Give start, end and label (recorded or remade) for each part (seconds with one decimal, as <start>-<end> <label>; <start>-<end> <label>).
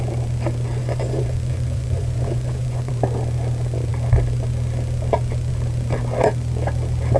0.0-0.8 recorded; 0.8-2.9 remade; 2.9-7.2 recorded